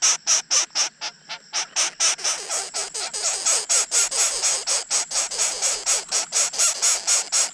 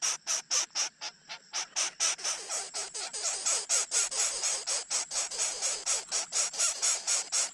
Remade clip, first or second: second